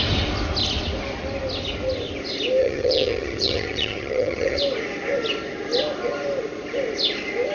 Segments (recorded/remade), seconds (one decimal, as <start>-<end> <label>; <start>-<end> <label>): 0.0-2.6 recorded; 2.6-4.6 remade; 4.6-7.5 recorded